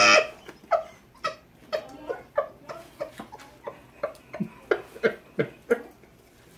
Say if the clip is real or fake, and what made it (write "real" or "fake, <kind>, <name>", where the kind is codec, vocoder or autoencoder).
real